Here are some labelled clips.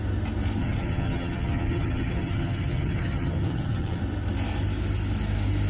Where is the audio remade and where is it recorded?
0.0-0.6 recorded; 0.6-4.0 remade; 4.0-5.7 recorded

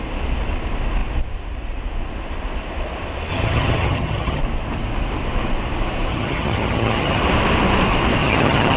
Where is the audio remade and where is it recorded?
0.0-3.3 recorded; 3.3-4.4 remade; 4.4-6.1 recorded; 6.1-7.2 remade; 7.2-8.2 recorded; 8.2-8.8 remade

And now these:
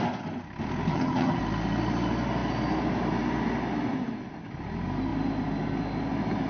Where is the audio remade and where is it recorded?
0.0-0.9 recorded; 0.9-1.4 remade; 1.4-6.5 recorded